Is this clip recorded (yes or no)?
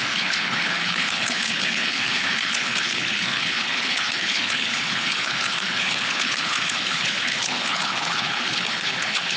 no